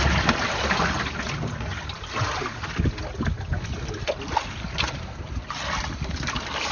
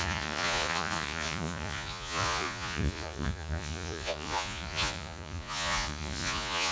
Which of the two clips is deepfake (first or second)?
second